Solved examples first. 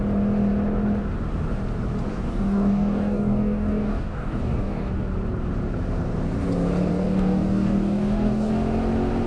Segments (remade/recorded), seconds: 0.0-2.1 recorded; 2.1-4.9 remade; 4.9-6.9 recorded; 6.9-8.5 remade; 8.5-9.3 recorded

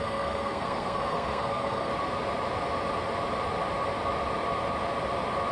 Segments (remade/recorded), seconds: 0.0-1.9 remade; 1.9-5.5 recorded